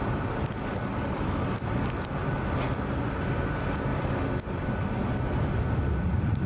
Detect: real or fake real